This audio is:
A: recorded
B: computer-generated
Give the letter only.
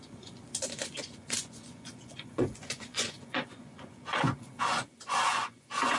B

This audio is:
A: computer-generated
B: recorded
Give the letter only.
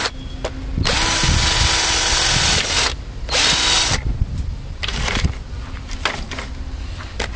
B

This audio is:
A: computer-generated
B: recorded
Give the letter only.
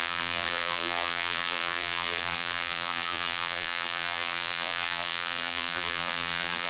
A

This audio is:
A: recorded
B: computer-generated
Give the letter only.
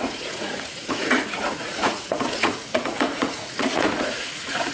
B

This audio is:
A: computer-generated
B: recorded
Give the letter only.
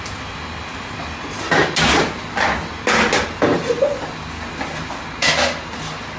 B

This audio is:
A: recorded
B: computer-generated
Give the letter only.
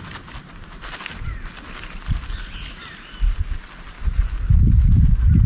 A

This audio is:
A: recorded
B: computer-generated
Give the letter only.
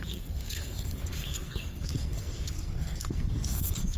B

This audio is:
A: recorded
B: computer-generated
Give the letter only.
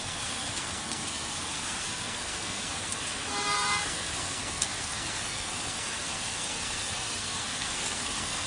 B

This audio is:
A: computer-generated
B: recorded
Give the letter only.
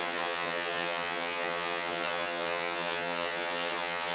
A